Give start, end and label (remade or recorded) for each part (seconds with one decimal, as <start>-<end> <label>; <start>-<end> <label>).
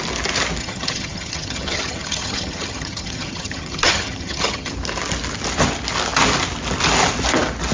0.0-0.6 recorded; 0.6-4.7 remade; 4.7-7.7 recorded